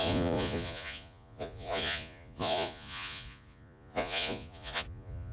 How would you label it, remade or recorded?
remade